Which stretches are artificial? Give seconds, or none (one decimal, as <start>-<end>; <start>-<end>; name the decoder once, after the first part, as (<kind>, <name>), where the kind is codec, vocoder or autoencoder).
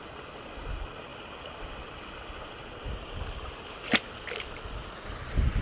none